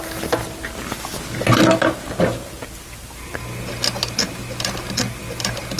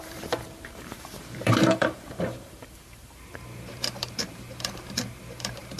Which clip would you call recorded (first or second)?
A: first